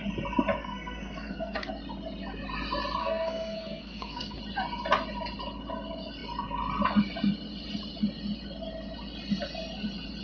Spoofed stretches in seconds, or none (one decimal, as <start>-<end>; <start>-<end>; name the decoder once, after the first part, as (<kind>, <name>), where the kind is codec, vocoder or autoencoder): 0.6-1.7 (codec, SNAC); 3.0-4.4